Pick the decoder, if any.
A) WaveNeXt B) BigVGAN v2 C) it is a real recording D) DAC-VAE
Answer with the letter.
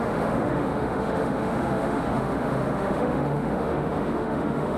D